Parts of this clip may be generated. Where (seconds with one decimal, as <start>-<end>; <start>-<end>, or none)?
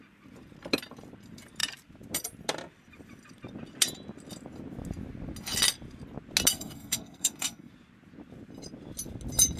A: 6.5-7.7